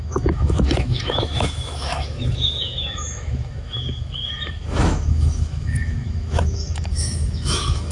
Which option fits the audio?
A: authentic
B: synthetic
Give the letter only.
B